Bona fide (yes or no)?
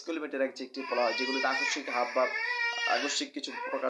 yes